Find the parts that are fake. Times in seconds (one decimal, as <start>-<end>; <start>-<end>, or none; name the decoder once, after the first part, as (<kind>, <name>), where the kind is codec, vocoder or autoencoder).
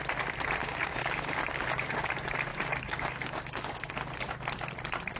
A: 0.6-2.1 (codec, DAC); 2.5-3.9